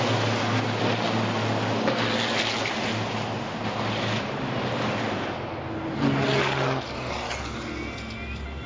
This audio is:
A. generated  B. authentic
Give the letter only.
B